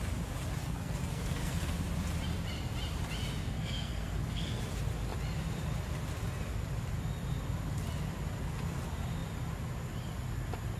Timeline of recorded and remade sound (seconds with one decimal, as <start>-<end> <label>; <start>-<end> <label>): 0.0-0.6 recorded; 0.6-1.7 remade; 1.7-3.4 recorded; 3.4-4.6 remade; 4.6-10.8 recorded